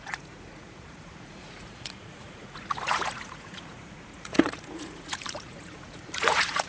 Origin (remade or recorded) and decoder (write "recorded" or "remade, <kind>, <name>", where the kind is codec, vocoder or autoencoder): remade, vocoder, Vocos